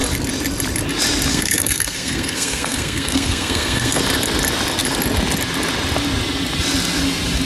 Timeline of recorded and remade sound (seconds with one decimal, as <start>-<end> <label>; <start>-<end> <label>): 0.0-1.3 recorded; 1.3-4.0 remade; 4.0-7.5 recorded